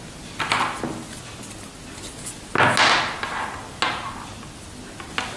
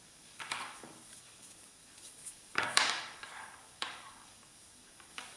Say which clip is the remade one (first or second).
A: second